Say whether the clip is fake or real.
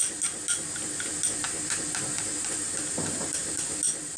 real